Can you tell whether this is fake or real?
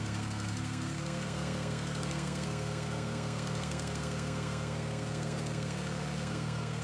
fake